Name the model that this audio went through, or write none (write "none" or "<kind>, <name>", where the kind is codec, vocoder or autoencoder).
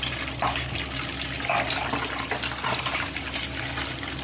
none